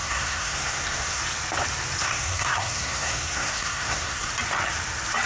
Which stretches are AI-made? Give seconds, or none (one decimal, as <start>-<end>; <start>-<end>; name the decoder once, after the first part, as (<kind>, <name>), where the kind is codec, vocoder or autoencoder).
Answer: 0.0-1.2 (codec, SNAC); 2.0-4.3